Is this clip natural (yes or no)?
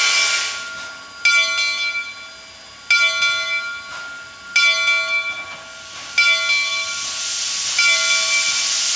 yes